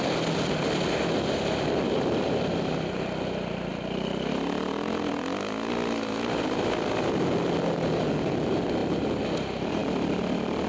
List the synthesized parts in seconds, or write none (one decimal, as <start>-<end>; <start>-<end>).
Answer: none